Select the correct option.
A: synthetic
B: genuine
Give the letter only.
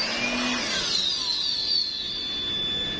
B